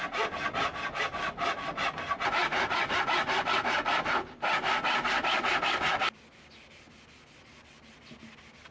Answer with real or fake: real